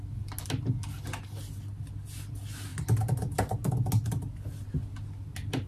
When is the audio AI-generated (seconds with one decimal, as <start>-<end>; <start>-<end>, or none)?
none